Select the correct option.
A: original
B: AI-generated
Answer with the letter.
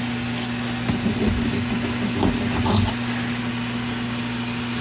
A